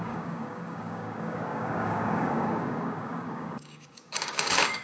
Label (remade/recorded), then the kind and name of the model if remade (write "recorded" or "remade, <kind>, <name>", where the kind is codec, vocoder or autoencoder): remade, codec, DAC